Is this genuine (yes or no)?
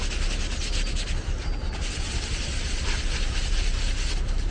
yes